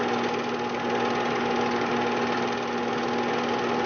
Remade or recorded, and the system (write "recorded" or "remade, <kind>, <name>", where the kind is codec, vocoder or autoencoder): recorded